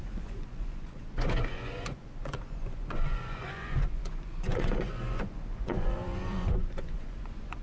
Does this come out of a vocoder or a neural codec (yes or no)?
yes